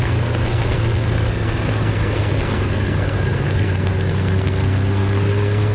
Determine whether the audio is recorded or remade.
remade